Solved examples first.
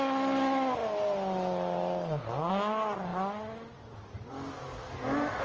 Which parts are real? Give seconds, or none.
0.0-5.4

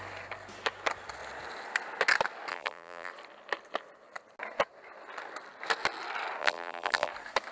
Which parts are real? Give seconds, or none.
0.0-2.5; 3.1-6.4; 7.1-7.5

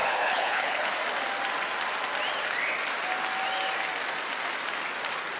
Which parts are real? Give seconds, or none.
0.9-5.4

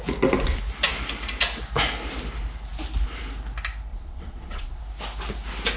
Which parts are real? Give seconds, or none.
0.0-3.9; 4.8-5.8

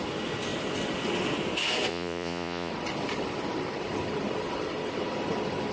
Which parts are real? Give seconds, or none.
0.0-1.9; 2.7-5.7

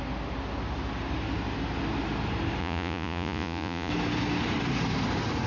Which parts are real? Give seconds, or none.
0.0-2.6; 3.9-5.5

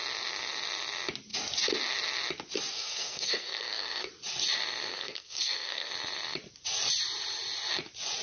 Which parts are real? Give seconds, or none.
0.0-2.7; 4.1-4.9; 5.9-8.2